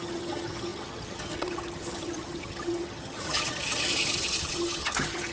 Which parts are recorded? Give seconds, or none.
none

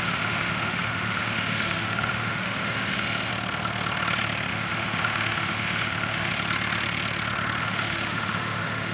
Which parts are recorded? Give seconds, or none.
3.3-4.5; 6.3-7.6

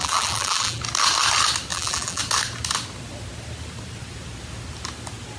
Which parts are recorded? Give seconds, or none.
0.8-1.7; 2.2-5.4

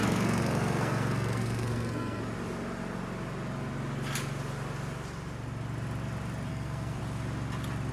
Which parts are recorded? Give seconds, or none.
2.2-6.5; 7.0-7.9